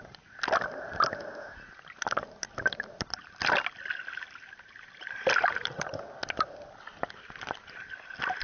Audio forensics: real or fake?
real